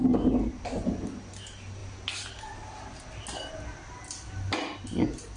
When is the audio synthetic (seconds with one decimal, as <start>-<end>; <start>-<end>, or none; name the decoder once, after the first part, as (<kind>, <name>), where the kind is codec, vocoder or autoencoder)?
none